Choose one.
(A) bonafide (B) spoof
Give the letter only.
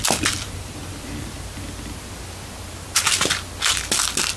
A